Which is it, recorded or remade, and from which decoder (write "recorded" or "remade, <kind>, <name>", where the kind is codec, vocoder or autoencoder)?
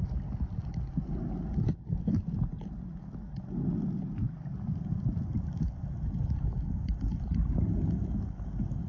recorded